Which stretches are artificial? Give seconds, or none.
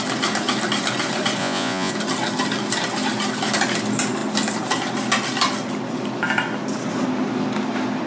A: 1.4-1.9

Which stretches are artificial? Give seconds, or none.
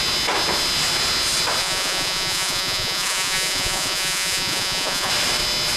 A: 1.6-5.1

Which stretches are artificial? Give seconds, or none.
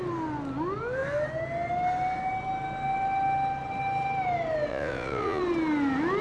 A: 4.7-5.4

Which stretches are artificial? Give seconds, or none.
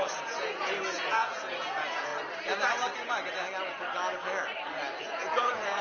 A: 0.0-2.1; 5.0-5.8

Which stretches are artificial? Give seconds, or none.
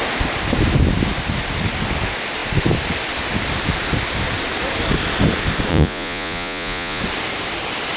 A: 5.7-7.0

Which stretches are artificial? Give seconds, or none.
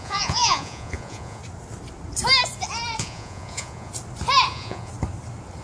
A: 0.0-1.4; 3.0-3.9; 4.5-4.9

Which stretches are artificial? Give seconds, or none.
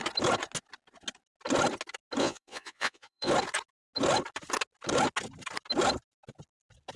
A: 2.2-3.3